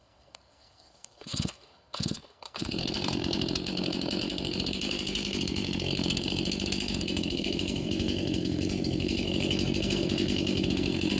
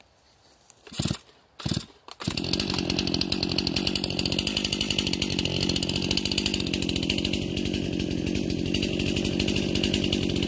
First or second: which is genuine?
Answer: second